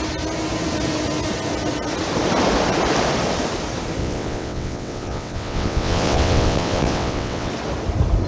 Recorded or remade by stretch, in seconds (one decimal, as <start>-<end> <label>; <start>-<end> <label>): 0.0-4.0 recorded; 4.0-7.5 remade; 7.5-8.3 recorded

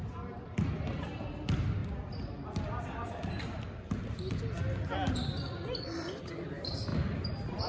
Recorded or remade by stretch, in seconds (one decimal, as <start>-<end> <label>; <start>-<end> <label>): 0.0-7.7 recorded

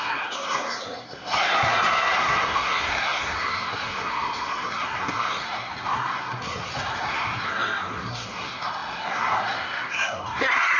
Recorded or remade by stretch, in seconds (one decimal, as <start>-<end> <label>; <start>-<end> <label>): 0.0-10.8 remade